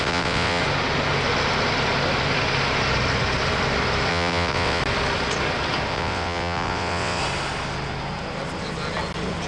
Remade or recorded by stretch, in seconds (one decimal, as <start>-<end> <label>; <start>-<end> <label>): 0.0-0.6 remade; 0.6-4.1 recorded; 4.1-4.8 remade; 4.8-5.9 recorded; 5.9-7.2 remade; 7.2-9.5 recorded